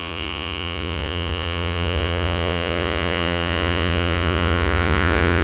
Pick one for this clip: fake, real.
fake